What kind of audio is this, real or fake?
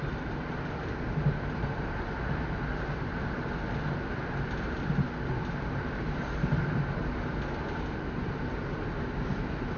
real